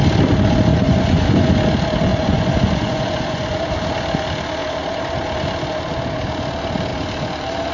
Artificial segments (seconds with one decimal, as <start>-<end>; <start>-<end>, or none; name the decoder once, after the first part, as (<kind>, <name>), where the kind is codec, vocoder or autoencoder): 0.7-1.5 (vocoder, Vocos); 2.1-3.6

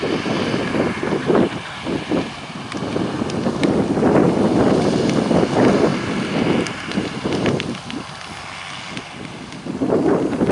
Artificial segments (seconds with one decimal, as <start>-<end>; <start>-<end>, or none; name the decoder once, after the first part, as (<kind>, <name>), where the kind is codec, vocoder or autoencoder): none

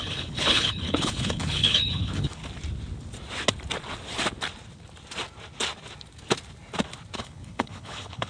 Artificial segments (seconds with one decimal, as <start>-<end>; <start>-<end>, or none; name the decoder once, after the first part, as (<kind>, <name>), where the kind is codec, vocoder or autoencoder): 0.0-2.4 (codec, HILCodec); 7.2-8.3

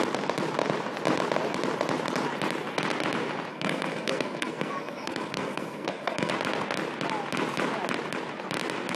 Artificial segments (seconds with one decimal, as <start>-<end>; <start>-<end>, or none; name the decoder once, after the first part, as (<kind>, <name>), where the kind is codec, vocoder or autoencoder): 3.5-6.3 (codec, SNAC)

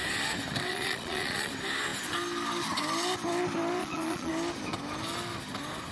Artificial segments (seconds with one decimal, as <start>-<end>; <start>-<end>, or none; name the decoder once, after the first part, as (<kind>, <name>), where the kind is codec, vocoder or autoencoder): 0.7-1.5 (vocoder, Vocos); 3.8-4.3

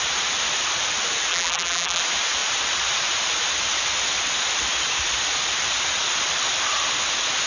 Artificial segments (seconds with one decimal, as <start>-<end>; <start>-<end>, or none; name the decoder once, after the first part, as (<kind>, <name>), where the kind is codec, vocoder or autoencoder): 1.3-2.0 (vocoder, BigVGAN v2)

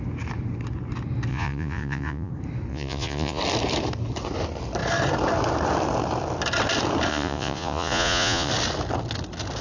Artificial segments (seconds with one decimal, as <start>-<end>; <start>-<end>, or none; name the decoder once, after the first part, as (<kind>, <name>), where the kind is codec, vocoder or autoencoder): 1.3-2.3 (vocoder, Vocos); 2.7-3.4; 7.1-8.5

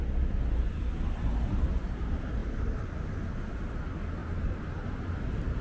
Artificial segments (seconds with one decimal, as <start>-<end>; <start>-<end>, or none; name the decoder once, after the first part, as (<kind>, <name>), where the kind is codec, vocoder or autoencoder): 4.2-4.9 (vocoder, BigVGAN v2)